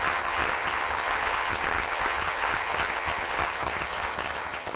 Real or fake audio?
fake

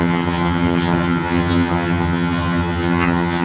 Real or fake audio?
fake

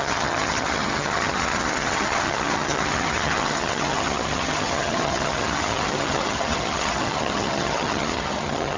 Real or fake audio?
fake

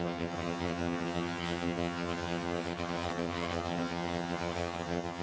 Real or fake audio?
fake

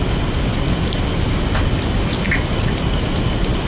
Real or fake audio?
real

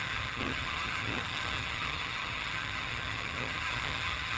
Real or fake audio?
fake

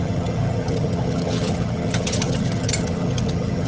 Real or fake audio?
fake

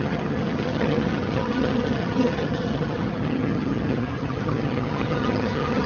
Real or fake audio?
fake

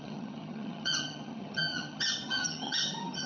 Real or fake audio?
fake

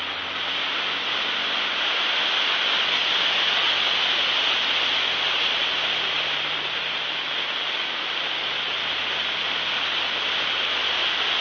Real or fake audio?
real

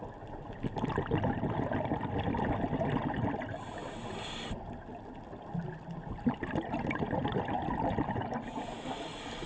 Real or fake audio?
real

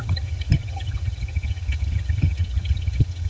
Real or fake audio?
fake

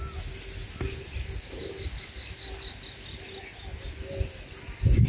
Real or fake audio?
real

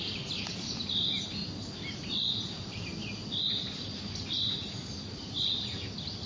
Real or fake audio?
real